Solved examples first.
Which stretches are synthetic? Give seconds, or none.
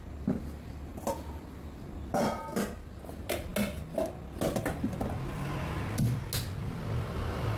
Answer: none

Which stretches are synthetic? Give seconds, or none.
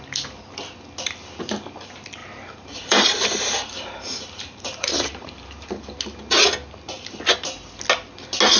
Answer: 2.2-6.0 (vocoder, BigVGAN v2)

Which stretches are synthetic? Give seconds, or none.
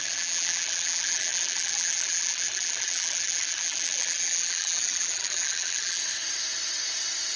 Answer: 0.0-6.0 (vocoder, BigVGAN v2)